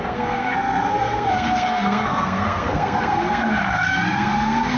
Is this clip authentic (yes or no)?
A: no